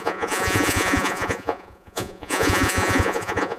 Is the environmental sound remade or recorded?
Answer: remade